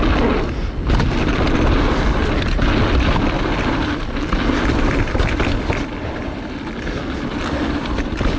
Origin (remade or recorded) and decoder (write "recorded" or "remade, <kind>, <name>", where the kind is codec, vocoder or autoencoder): recorded